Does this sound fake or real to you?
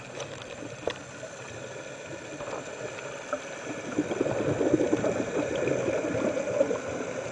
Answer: real